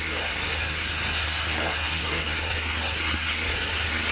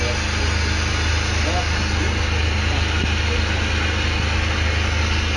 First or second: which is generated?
first